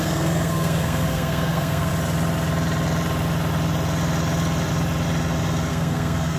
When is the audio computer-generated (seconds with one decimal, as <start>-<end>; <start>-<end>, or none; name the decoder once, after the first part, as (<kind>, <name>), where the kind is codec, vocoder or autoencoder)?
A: 0.0-1.9 (codec, SNAC); 5.7-6.4